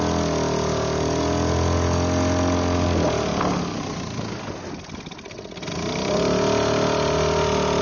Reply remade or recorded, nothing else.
recorded